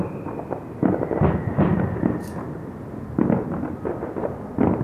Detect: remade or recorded recorded